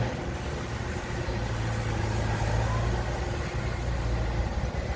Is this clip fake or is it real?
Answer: real